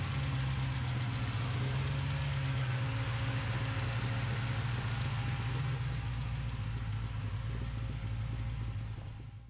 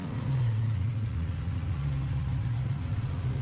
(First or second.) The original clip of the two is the first